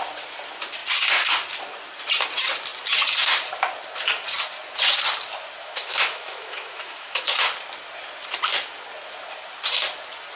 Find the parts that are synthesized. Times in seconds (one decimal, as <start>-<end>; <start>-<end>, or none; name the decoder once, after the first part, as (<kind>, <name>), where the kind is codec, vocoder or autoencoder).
5.6-7.3 (autoencoder, DAC-VAE)